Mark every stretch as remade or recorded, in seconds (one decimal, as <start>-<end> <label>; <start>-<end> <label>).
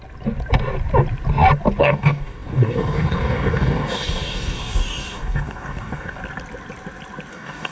0.0-1.8 recorded; 1.8-6.2 remade; 6.2-7.3 recorded; 7.3-7.7 remade